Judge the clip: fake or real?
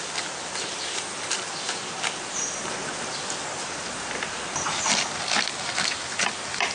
real